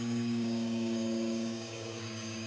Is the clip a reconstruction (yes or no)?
yes